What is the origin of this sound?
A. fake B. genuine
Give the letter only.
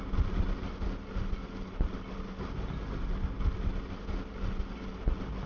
B